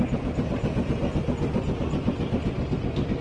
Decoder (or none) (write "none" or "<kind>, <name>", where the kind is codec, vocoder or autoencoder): none